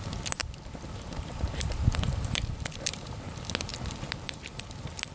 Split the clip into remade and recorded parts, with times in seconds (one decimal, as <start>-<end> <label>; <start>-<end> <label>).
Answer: 0.0-0.4 recorded; 0.4-3.3 remade; 3.3-3.7 recorded; 3.7-4.4 remade; 4.4-5.1 recorded